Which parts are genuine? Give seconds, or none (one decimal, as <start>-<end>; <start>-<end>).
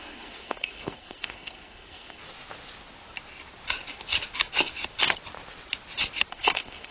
2.2-6.3